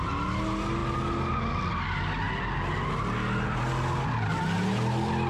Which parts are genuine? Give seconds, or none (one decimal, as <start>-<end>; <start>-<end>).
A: 0.0-5.3